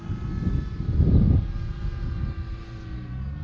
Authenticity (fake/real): real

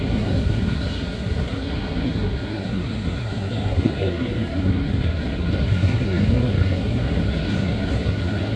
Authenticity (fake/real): fake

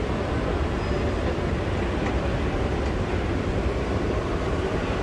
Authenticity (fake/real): real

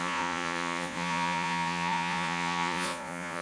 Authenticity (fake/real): fake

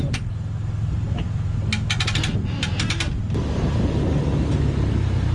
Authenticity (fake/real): real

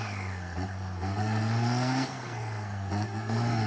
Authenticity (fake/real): fake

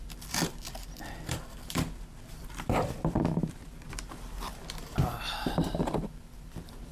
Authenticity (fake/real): fake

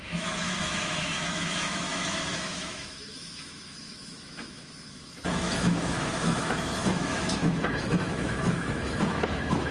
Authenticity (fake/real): fake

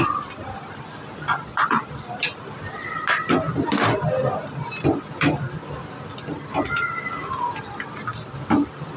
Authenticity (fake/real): real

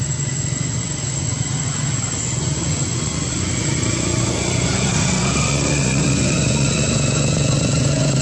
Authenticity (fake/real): fake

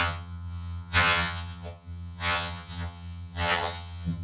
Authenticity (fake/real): fake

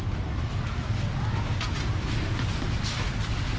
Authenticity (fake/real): real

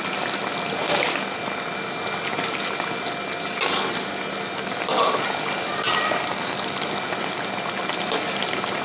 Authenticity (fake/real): real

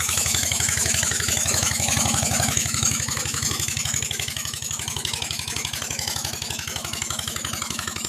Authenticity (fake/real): fake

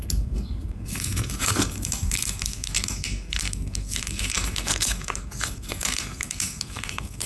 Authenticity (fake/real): fake